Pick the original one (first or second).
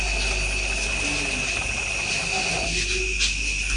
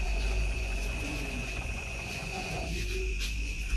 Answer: first